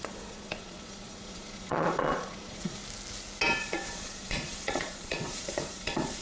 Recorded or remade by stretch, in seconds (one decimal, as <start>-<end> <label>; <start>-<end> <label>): 0.0-2.8 remade; 2.8-3.6 recorded; 3.6-6.2 remade